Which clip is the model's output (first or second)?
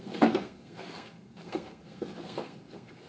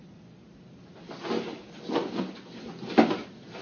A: first